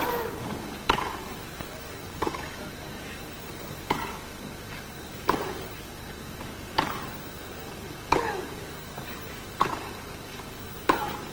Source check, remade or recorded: remade